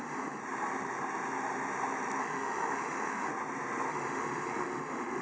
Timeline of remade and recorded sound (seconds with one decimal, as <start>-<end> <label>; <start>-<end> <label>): 0.0-0.4 remade; 0.4-2.2 recorded; 2.2-3.3 remade; 3.3-3.9 recorded; 3.9-5.2 remade